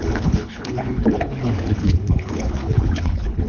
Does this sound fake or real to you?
fake